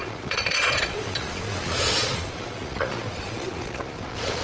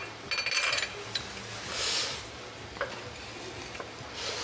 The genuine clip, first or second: second